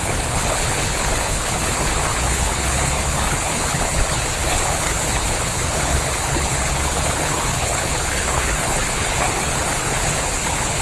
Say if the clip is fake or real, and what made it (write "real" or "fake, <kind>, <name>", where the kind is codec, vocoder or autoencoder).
fake, codec, HILCodec